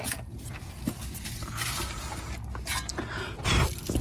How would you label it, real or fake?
real